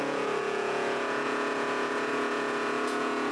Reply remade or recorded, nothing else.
remade